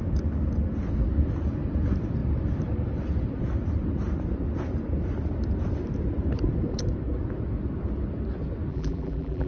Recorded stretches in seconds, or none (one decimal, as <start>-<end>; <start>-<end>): 0.0-8.7